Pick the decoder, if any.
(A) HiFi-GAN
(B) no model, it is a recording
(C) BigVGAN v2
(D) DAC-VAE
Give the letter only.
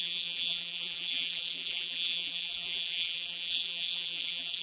C